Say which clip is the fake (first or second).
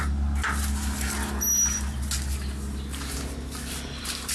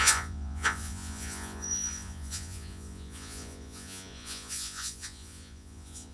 second